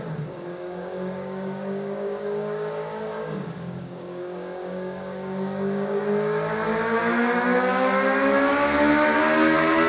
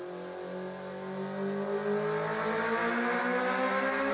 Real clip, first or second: second